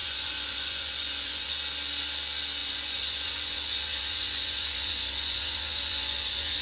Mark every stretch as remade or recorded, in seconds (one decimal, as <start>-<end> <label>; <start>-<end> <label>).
0.0-1.5 remade; 1.5-2.6 recorded; 2.6-6.6 remade